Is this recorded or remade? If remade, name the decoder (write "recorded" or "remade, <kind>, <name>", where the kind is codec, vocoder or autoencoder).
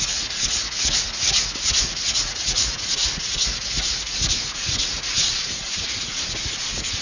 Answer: remade, vocoder, Vocos